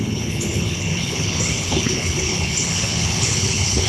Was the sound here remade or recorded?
remade